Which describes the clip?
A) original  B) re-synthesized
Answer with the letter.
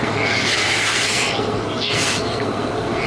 B